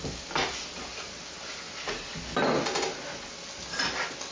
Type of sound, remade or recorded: recorded